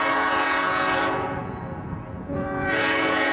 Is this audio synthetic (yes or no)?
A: yes